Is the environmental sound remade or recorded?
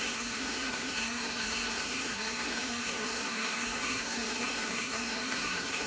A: remade